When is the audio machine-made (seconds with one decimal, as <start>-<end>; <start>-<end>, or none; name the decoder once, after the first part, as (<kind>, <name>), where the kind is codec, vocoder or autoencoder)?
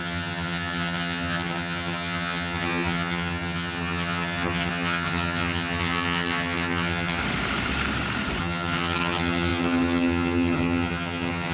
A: 0.0-7.2 (vocoder, HiFi-GAN); 8.4-11.5